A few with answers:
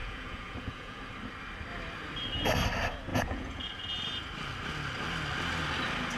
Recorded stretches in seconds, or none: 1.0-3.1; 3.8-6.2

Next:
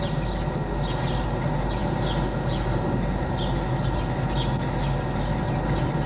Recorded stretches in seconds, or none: 0.0-6.1